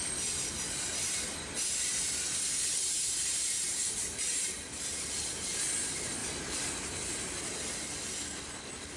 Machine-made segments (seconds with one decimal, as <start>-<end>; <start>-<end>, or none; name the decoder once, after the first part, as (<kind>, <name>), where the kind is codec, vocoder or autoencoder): 2.7-3.7 (vocoder, BigVGAN v2); 6.2-7.4